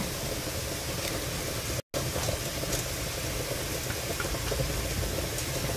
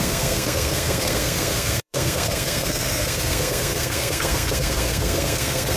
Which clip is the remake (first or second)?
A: second